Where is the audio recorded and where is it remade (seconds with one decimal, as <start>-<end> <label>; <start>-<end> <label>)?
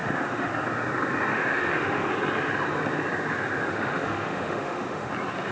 0.0-0.5 remade; 0.5-1.3 recorded; 1.3-2.1 remade; 2.1-3.6 recorded; 3.6-5.1 remade; 5.1-5.5 recorded